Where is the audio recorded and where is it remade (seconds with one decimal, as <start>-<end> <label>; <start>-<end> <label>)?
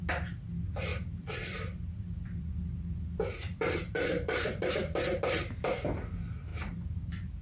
0.0-0.9 recorded; 0.9-5.2 remade; 5.2-6.5 recorded; 6.5-7.0 remade; 7.0-7.4 recorded